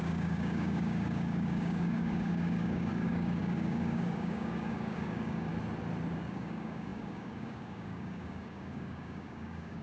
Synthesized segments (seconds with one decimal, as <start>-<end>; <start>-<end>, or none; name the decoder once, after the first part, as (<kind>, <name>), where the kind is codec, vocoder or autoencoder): 0.0-5.5 (codec, DAC); 6.1-9.8